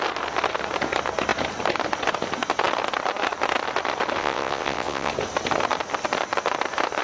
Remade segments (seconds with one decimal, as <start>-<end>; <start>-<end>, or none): 4.2-5.1